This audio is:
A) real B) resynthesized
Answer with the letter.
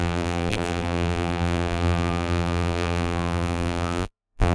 B